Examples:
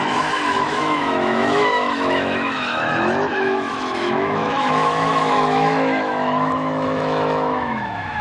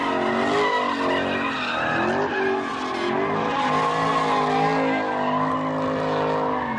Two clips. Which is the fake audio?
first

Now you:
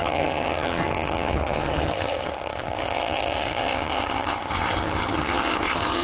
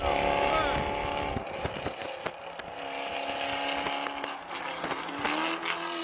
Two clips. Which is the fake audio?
first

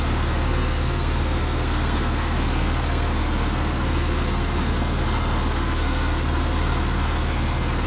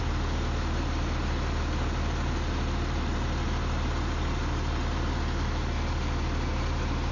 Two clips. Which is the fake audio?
first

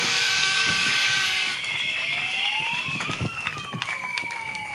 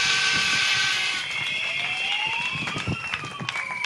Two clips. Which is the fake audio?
first